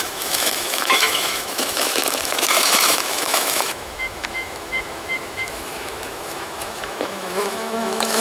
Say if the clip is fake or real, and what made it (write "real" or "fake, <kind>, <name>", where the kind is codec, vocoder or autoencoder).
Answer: fake, autoencoder, DAC-VAE